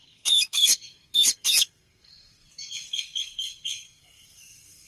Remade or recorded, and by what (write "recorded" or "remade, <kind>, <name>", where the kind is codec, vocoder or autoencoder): remade, codec, SNAC